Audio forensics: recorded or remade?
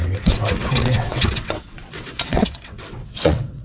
remade